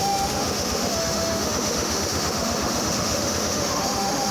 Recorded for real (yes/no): no